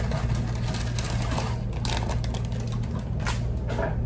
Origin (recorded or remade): recorded